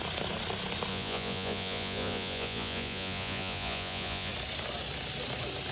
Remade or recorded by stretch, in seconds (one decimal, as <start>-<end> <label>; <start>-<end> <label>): 0.0-0.9 recorded; 0.9-4.3 remade; 4.3-5.7 recorded